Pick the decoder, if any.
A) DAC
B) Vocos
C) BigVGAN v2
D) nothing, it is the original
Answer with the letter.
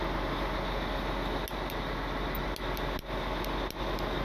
D